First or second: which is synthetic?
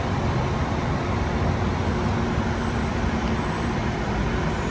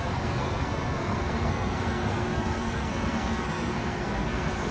second